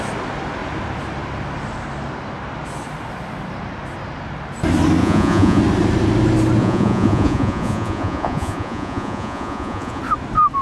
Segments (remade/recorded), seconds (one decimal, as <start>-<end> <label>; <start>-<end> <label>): 0.0-5.0 recorded; 5.0-5.6 remade; 5.6-6.6 recorded; 6.6-10.0 remade; 10.0-10.6 recorded